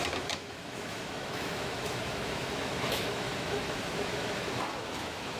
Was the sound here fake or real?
fake